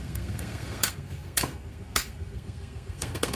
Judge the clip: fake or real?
fake